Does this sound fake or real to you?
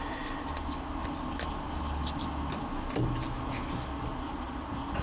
real